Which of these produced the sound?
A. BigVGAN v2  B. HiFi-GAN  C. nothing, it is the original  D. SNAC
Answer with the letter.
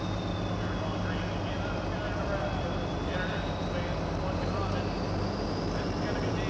C